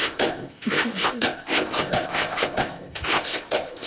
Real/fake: fake